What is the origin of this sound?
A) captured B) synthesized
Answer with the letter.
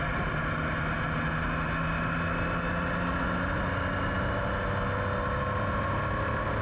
A